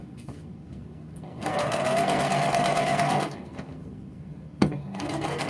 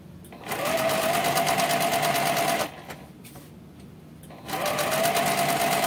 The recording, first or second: second